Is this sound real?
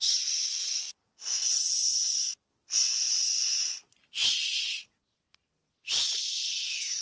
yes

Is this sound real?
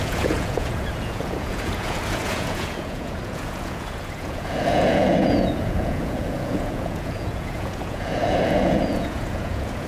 no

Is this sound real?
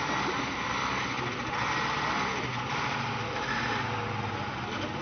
yes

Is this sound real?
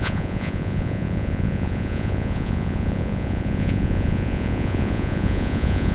no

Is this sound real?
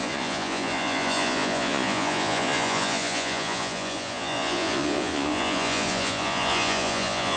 no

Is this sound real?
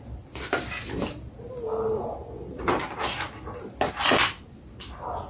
yes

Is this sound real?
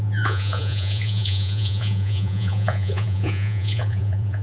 no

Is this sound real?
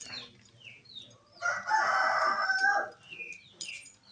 yes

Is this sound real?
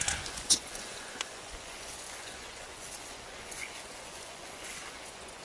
no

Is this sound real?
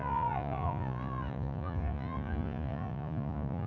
no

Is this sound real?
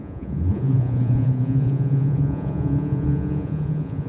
no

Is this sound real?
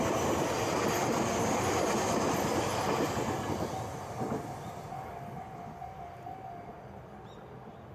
yes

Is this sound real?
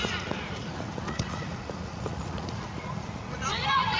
no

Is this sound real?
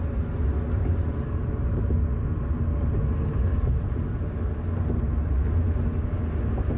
yes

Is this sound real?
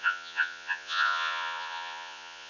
no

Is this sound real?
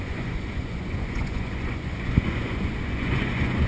no